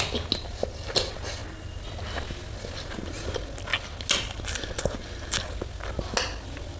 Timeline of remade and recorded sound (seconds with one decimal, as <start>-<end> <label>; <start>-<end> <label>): 0.0-6.8 recorded